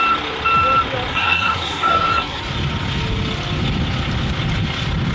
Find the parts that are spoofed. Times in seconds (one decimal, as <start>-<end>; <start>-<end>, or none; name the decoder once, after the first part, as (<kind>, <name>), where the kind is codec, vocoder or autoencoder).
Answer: 1.1-2.4 (codec, SNAC)